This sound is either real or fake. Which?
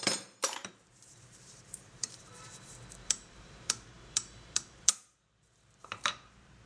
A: fake